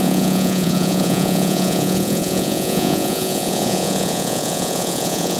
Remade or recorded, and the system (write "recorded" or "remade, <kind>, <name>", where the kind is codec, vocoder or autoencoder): remade, vocoder, Vocos